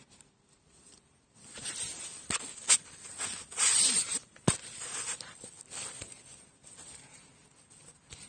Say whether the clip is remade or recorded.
recorded